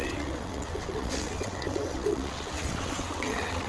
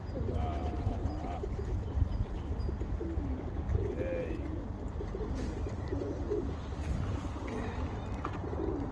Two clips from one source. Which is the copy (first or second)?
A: first